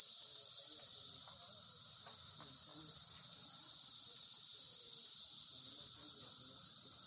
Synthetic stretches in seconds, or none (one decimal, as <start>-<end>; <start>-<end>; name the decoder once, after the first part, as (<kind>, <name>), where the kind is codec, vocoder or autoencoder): 2.7-4.9 (vocoder, BigVGAN v2)